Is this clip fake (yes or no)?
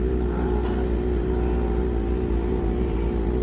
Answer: no